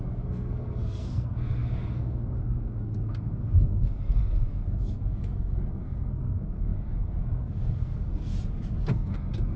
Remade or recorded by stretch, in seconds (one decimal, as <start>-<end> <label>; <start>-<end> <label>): 0.0-8.3 remade; 8.3-8.9 recorded; 8.9-9.6 remade